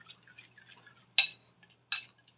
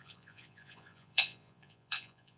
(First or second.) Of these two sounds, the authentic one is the first